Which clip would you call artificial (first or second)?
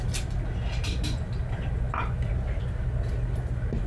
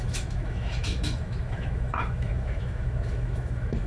second